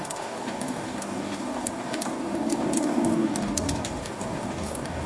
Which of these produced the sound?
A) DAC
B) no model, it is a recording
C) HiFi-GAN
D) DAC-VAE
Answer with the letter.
A